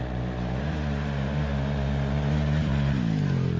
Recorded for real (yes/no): yes